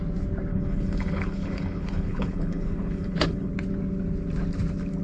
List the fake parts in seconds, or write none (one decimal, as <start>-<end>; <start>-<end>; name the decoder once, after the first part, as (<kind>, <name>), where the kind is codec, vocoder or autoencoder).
0.5-3.5 (codec, HILCodec)